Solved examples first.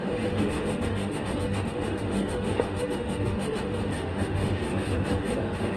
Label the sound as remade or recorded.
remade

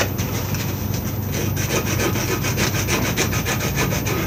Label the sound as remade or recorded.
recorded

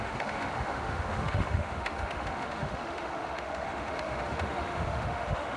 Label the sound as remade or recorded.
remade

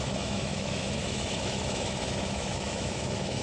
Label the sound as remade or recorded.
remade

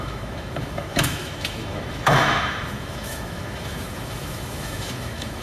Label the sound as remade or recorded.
remade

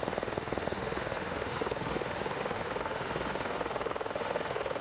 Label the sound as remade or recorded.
remade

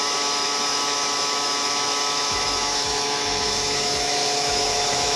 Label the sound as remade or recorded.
remade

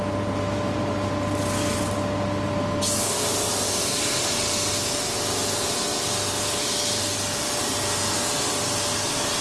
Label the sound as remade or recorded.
recorded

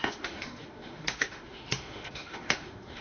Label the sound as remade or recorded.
remade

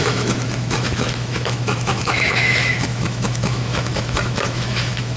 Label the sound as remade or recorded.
remade